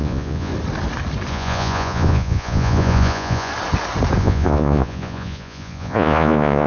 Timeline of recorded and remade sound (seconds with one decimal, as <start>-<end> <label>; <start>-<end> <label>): 0.0-0.5 remade; 0.5-1.3 recorded; 1.3-3.5 remade; 3.5-4.2 recorded; 4.2-6.7 remade